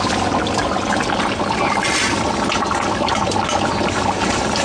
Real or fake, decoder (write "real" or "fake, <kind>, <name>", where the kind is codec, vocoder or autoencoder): real